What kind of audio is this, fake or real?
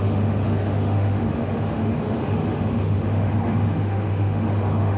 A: fake